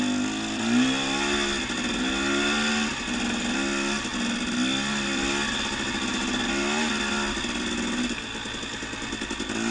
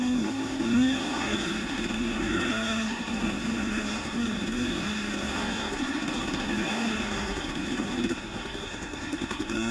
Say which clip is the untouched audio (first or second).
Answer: first